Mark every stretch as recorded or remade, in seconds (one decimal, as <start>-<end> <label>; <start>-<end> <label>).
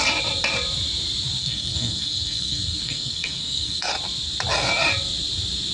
0.0-1.4 recorded; 1.4-3.9 remade; 3.9-5.7 recorded